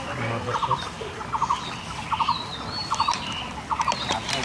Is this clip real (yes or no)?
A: yes